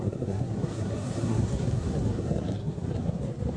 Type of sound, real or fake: fake